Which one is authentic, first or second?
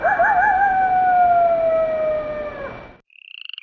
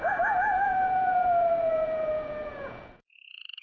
first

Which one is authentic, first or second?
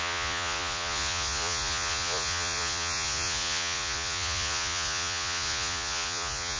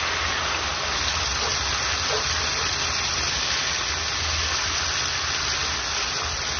second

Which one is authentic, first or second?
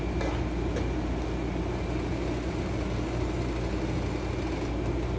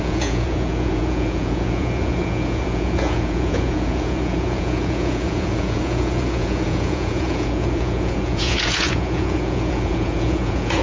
first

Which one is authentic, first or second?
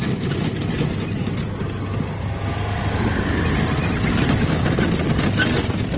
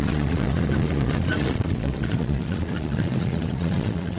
first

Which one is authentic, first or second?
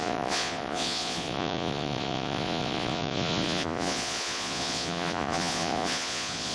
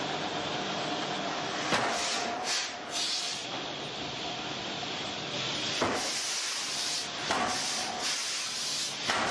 second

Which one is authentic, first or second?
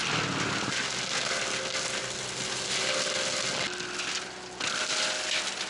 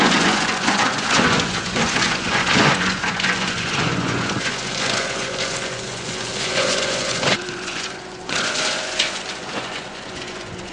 first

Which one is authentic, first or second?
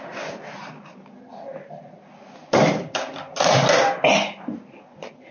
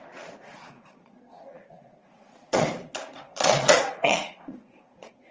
first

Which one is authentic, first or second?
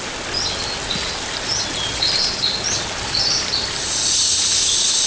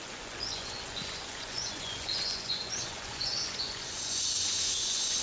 first